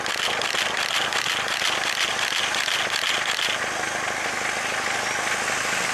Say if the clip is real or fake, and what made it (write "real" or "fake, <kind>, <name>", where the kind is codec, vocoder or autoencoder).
real